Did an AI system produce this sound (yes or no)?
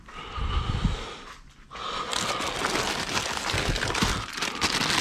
no